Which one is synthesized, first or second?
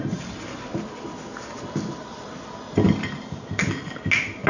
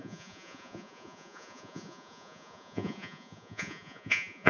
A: second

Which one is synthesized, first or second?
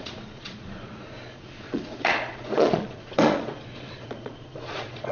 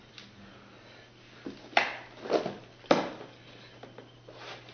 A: first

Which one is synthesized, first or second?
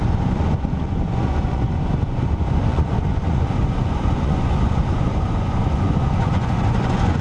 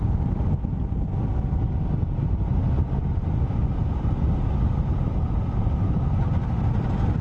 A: first